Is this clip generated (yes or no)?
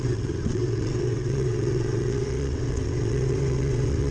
yes